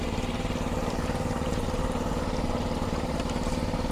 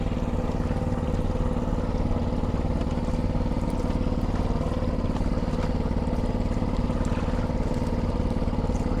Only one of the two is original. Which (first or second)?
second